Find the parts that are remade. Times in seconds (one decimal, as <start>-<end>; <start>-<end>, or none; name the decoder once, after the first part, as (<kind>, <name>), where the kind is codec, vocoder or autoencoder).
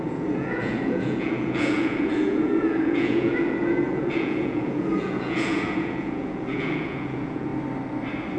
0.0-7.5 (vocoder, Vocos)